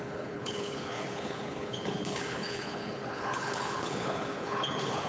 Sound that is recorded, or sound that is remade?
remade